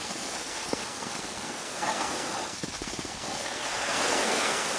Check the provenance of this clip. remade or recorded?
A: remade